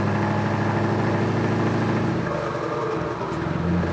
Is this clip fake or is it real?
real